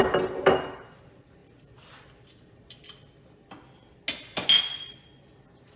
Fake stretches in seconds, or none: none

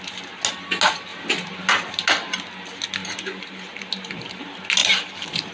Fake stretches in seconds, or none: 1.1-1.7 (vocoder, BigVGAN v2); 3.0-3.9; 4.8-5.5

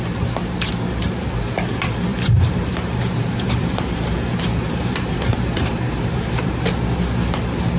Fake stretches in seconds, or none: 2.1-6.7 (vocoder, BigVGAN v2)

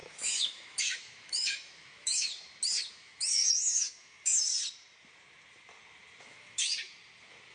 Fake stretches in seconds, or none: 0.0-2.3 (autoencoder, DAC-VAE); 2.9-4.5; 6.2-6.7